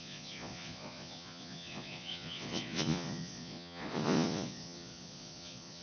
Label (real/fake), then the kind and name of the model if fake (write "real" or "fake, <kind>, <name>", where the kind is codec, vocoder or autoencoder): fake, vocoder, Vocos